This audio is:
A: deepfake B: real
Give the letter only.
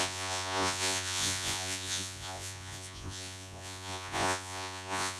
A